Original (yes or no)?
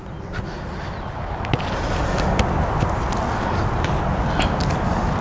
yes